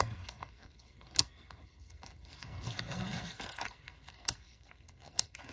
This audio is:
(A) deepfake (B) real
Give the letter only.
A